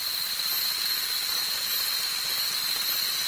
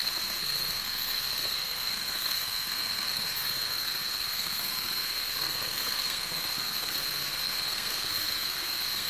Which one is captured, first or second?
first